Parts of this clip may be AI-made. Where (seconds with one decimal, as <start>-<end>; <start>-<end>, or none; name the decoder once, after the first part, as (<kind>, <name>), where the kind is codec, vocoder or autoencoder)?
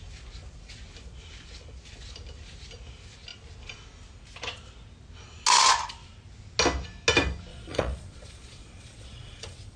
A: 7.5-9.8 (vocoder, Vocos)